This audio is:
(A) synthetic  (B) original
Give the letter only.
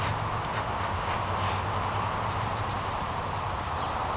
B